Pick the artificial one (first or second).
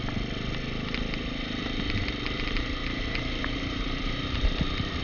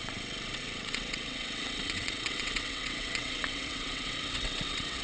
second